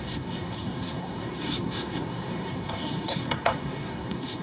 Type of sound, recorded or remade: remade